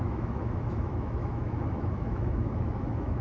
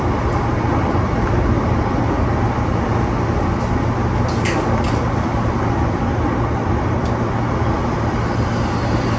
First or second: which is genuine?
second